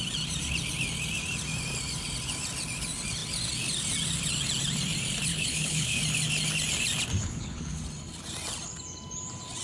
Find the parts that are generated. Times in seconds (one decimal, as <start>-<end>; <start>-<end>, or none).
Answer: 5.3-6.0; 7.2-7.8